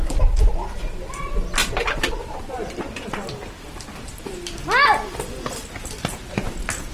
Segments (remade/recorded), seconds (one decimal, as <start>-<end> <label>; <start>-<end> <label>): 0.0-1.6 recorded; 1.6-3.3 remade; 3.3-6.9 recorded